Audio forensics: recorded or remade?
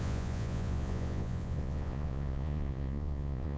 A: remade